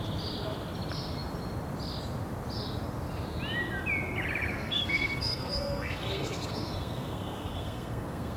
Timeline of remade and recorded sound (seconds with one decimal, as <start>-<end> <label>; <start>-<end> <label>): 0.0-4.5 recorded; 4.5-8.4 remade